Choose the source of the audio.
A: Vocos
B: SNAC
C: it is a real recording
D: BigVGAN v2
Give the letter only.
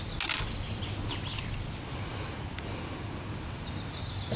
C